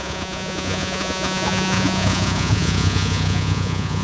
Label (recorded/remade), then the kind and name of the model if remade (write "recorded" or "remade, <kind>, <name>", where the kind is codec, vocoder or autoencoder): remade, vocoder, Vocos